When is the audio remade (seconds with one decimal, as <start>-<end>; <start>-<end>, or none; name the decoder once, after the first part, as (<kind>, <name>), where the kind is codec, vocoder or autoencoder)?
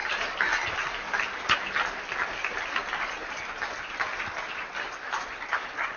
none